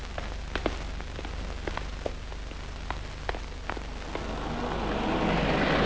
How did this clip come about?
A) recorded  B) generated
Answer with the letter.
A